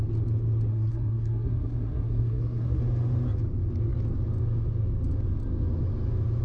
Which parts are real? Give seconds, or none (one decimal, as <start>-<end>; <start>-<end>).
0.0-0.7; 2.8-6.4